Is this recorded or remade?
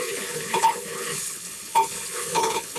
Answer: remade